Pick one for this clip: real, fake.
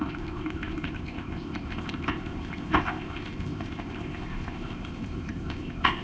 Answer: fake